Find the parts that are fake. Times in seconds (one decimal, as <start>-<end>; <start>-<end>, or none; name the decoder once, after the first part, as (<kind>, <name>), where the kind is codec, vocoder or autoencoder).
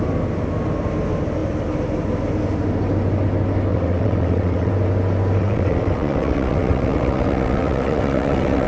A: 3.7-4.7 (vocoder, WaveNeXt); 5.4-8.7